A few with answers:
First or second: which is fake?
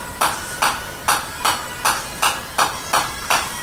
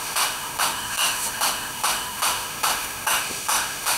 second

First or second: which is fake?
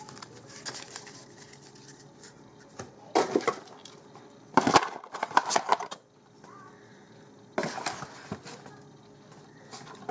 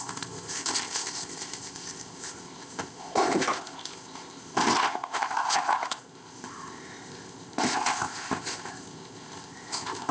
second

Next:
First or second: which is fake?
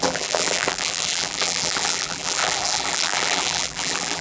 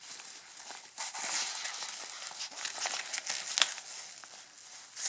first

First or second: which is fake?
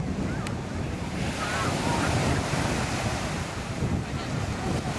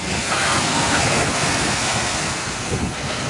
second